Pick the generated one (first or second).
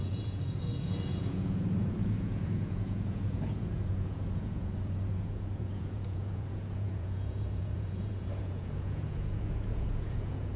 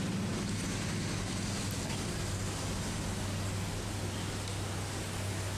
first